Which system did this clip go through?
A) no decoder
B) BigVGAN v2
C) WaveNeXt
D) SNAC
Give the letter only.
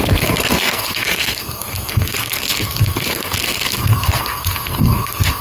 D